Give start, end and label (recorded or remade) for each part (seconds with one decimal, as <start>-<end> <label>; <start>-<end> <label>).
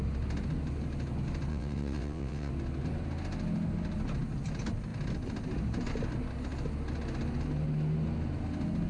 0.0-1.5 recorded; 1.5-2.5 remade; 2.5-8.9 recorded